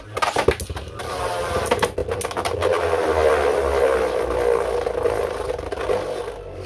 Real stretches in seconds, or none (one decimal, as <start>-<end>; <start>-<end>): 0.0-6.7